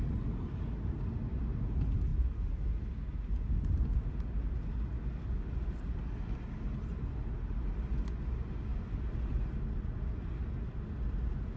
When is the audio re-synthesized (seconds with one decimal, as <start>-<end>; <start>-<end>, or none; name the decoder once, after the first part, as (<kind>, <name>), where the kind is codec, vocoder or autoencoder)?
none